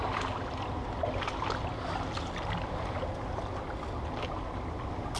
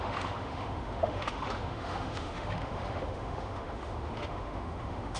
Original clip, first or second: first